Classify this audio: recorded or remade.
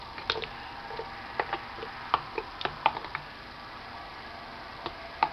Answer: recorded